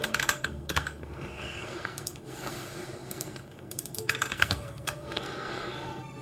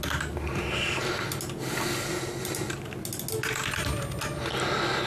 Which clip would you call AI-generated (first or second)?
first